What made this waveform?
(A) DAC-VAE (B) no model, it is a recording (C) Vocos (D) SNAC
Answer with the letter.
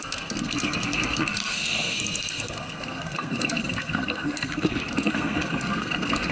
D